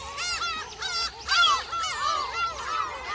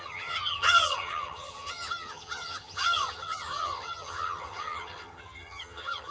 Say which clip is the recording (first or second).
first